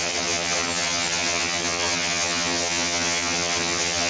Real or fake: fake